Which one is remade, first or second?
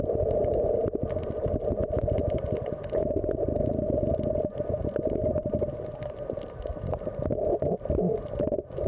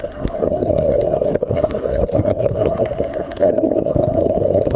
second